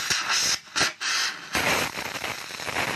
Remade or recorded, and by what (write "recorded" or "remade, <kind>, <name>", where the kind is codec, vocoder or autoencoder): recorded